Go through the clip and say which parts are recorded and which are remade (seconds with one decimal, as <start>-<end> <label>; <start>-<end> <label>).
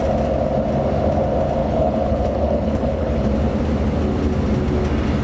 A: 0.0-1.6 recorded; 1.6-3.3 remade; 3.3-5.2 recorded